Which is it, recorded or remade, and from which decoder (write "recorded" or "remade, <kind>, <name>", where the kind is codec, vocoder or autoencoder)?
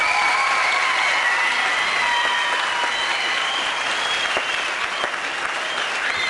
recorded